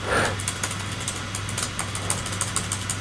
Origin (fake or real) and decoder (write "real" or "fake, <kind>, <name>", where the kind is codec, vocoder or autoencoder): real